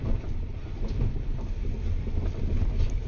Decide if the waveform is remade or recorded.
remade